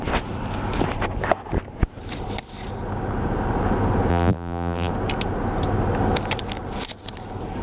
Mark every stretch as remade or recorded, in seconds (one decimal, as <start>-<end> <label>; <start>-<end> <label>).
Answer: 0.0-4.1 recorded; 4.1-4.9 remade; 4.9-7.6 recorded